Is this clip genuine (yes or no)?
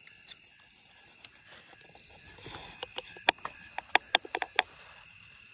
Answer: yes